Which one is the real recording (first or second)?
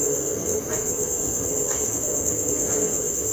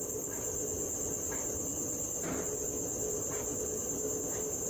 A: second